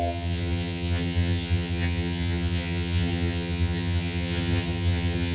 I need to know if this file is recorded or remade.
remade